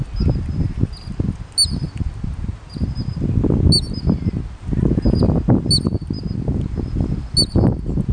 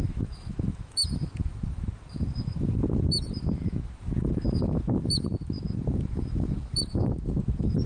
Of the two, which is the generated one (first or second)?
second